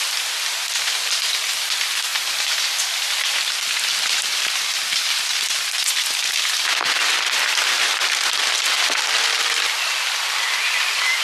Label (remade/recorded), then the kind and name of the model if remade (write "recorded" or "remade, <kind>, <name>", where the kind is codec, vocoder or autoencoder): recorded